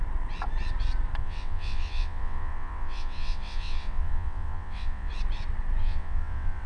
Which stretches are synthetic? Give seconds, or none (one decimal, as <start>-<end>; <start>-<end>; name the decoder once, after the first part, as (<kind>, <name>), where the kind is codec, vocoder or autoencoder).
1.2-5.1 (vocoder, WaveNeXt); 5.8-6.7